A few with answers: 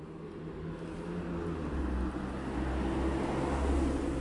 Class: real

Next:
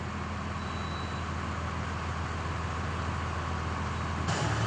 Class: real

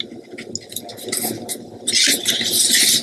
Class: real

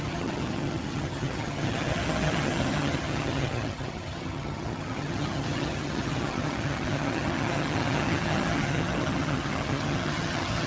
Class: fake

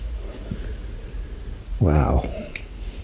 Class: fake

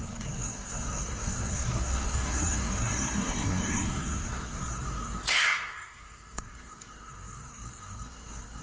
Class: fake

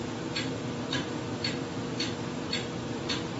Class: real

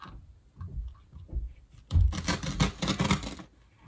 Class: real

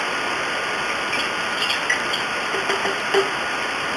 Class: real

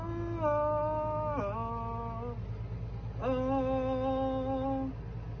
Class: real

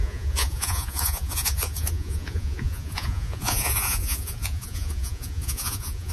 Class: fake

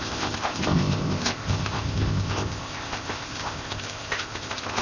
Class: fake